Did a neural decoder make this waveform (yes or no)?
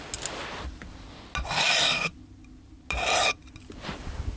no